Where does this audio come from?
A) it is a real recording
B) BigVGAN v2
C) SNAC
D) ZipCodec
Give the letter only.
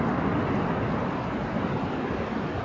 A